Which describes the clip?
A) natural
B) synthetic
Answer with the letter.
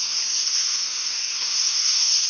B